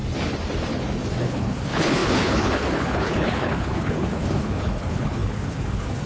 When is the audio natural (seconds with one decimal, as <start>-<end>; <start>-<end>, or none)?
0.0-1.2